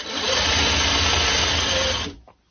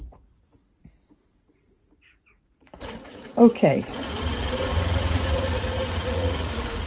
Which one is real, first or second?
first